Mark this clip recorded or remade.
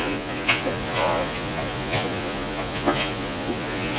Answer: remade